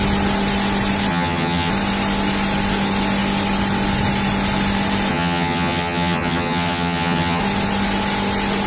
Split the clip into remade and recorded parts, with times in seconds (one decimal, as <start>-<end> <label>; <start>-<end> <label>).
0.0-1.1 recorded; 1.1-1.7 remade; 1.7-5.1 recorded; 5.1-7.4 remade; 7.4-8.7 recorded